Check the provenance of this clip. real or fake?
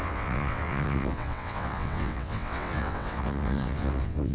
fake